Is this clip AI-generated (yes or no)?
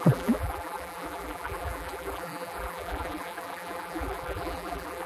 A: yes